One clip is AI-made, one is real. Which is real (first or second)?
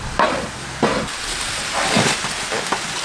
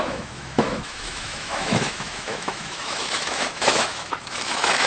first